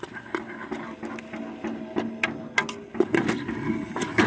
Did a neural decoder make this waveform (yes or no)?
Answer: no